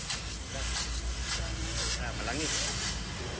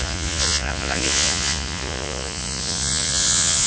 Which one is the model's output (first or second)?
second